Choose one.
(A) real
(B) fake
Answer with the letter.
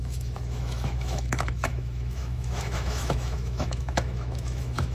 B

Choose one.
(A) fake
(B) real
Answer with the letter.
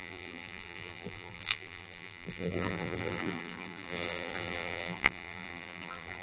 A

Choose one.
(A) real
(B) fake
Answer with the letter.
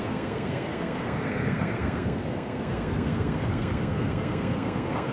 B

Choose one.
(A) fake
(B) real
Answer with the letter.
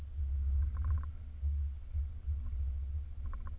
B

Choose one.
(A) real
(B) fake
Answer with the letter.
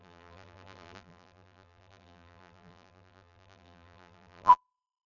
B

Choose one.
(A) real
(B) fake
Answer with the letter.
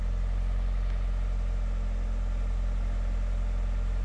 A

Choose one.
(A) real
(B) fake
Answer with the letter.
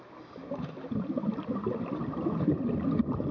A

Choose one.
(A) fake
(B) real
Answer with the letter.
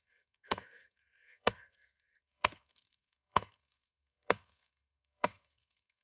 A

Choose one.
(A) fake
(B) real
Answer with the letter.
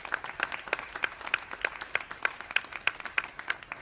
B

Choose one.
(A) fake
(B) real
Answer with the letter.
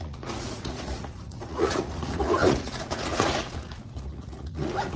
A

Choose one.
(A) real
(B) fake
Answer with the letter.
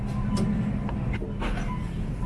A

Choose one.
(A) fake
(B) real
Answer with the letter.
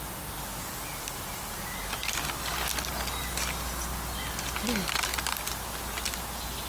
B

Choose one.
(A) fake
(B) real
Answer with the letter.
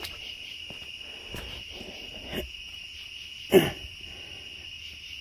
B